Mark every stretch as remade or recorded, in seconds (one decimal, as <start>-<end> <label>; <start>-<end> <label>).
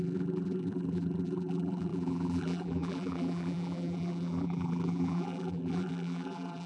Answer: 0.0-6.7 remade